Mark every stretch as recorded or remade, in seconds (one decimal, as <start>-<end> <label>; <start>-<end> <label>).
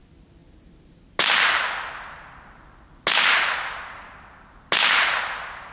0.0-5.7 recorded